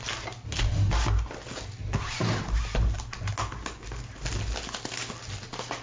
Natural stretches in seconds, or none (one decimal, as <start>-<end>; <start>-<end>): 0.0-5.8